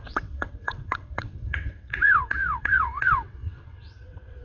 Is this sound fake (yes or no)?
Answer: yes